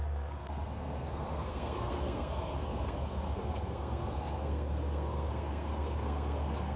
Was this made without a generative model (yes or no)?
no